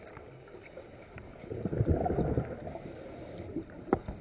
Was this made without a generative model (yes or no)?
yes